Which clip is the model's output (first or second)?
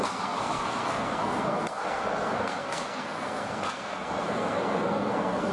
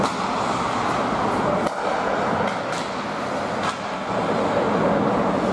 first